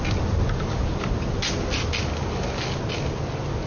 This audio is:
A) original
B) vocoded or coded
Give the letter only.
A